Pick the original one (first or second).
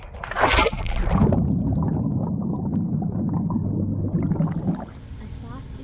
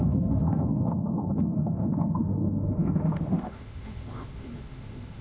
first